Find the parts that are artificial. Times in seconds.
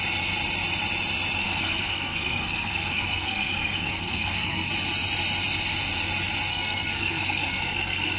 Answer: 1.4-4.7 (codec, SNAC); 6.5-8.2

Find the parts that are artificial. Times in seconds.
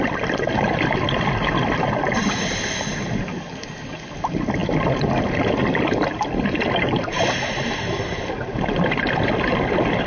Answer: none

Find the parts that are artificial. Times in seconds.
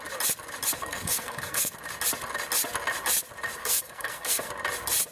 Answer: 0.8-1.7 (codec, SNAC); 3.6-4.5